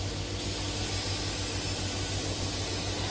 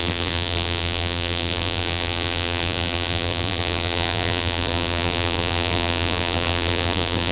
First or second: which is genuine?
first